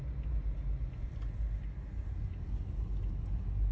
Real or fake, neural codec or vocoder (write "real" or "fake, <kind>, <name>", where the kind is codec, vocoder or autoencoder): real